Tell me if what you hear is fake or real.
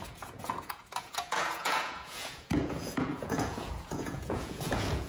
fake